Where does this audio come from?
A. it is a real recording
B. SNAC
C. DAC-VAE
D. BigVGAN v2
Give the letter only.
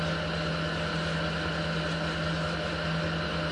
A